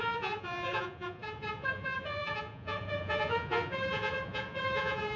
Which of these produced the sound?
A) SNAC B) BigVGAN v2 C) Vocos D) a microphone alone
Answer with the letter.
C